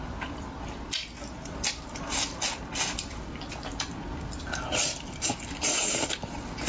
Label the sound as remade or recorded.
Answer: recorded